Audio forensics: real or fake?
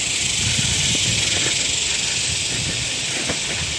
real